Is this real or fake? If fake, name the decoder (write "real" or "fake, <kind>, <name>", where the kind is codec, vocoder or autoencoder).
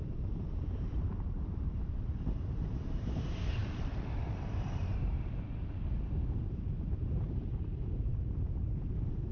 fake, vocoder, BigVGAN v2